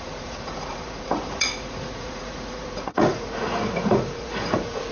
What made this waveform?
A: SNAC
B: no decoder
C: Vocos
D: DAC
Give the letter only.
C